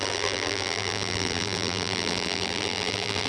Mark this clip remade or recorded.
remade